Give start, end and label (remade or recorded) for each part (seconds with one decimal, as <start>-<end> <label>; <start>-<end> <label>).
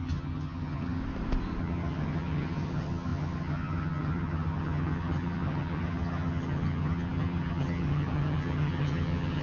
0.0-1.0 remade; 1.0-1.6 recorded; 1.6-9.4 remade